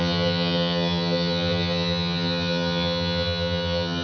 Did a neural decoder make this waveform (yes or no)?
yes